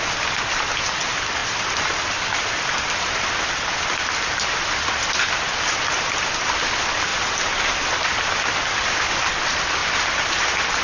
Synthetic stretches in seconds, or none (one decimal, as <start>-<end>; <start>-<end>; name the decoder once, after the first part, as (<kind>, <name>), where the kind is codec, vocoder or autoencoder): 9.8-10.4 (vocoder, BigVGAN v2)